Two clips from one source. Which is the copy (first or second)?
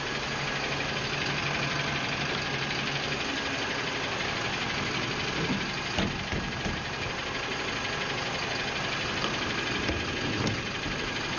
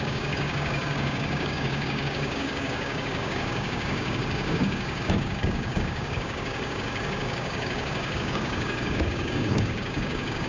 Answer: second